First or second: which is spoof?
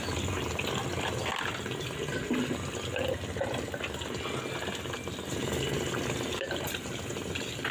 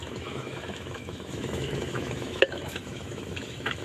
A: second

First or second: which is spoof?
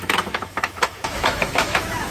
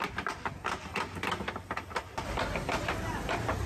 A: first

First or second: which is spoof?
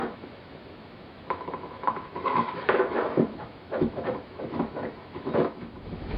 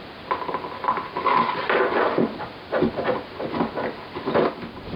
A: first